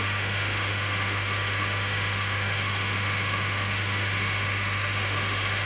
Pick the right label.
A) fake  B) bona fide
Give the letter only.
A